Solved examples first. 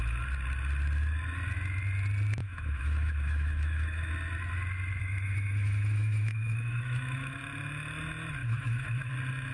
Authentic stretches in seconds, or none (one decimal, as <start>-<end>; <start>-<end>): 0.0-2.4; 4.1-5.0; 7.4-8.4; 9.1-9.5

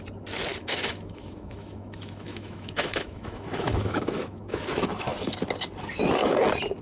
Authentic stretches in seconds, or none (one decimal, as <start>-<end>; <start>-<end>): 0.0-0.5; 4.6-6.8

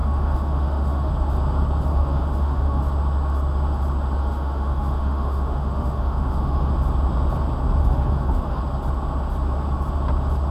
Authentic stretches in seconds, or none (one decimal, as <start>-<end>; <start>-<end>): 1.1-1.9; 2.8-4.2; 6.7-7.8; 8.6-10.5

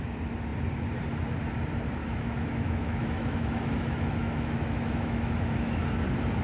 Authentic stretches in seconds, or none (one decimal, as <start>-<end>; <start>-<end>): 0.0-2.0; 5.8-6.4

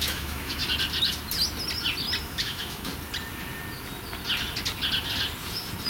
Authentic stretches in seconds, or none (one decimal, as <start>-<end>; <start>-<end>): 0.6-2.2; 2.9-5.9

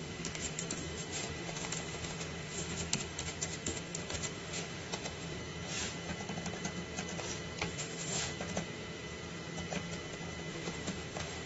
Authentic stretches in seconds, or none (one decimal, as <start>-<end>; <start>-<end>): 5.4-7.7; 8.3-10.5

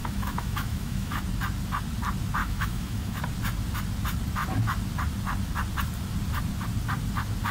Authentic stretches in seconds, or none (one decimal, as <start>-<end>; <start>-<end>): 1.2-2.4; 3.2-7.5